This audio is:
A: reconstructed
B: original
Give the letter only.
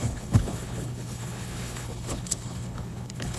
A